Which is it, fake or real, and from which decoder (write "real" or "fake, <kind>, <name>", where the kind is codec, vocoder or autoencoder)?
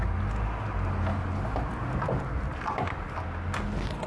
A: real